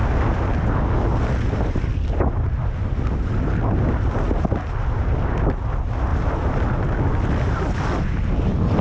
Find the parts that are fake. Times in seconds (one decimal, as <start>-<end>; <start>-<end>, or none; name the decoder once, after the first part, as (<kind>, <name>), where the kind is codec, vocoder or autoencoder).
6.1-6.7 (vocoder, BigVGAN v2)